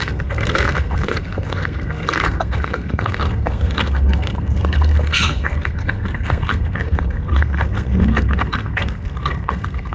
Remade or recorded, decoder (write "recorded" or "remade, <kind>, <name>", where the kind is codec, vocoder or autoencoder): remade, codec, SNAC